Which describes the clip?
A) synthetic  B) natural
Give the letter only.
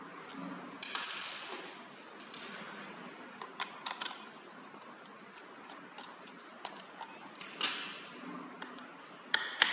B